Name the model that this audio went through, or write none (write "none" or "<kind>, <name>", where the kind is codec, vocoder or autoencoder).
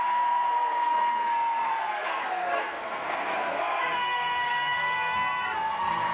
codec, SNAC